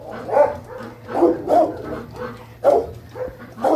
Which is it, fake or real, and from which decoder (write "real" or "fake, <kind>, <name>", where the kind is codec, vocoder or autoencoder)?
real